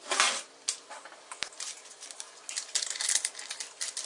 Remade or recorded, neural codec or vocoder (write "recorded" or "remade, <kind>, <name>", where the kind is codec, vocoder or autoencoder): recorded